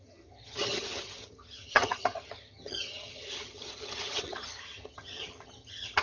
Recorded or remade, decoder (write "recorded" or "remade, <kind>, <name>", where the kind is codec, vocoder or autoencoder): remade, vocoder, HiFi-GAN